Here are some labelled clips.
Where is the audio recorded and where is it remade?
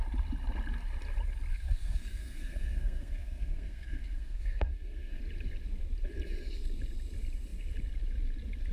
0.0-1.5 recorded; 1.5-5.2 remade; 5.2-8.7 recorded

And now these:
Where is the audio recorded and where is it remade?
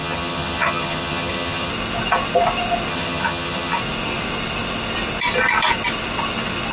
0.0-1.7 remade; 1.7-2.9 recorded; 2.9-3.8 remade; 3.8-6.7 recorded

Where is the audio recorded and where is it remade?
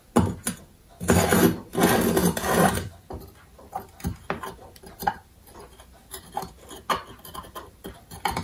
0.0-2.2 recorded; 2.2-3.1 remade; 3.1-7.3 recorded; 7.3-8.4 remade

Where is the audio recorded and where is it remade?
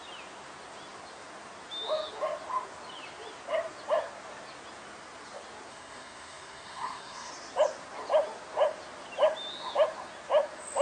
0.0-5.7 recorded; 5.7-7.3 remade; 7.3-10.8 recorded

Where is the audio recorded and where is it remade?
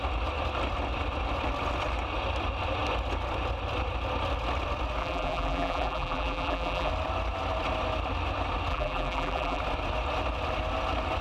0.0-5.0 recorded; 5.0-6.9 remade; 6.9-8.7 recorded; 8.7-9.6 remade; 9.6-11.2 recorded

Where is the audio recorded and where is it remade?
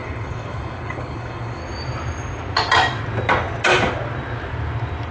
0.0-1.6 remade; 1.6-5.1 recorded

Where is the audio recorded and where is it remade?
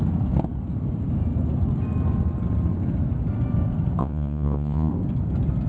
0.0-4.0 recorded; 4.0-4.9 remade; 4.9-5.7 recorded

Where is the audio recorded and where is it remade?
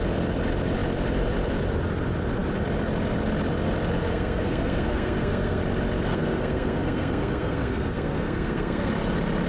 0.0-4.0 recorded; 4.0-5.6 remade; 5.6-6.1 recorded; 6.1-8.9 remade; 8.9-9.5 recorded